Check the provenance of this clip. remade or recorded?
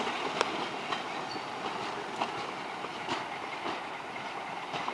recorded